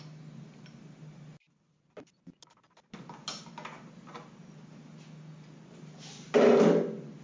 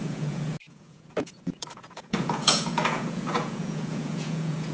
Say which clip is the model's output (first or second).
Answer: second